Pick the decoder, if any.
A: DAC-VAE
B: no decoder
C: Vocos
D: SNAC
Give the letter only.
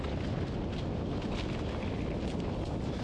B